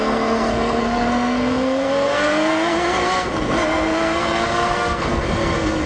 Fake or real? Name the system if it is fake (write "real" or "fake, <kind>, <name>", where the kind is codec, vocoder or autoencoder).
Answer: fake, codec, SNAC